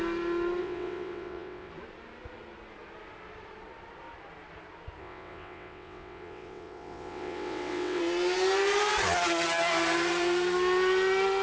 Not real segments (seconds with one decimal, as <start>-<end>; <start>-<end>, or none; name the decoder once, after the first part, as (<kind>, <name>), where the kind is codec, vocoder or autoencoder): 0.6-1.7 (vocoder, WaveNeXt); 5.0-8.0